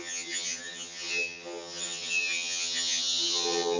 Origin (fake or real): fake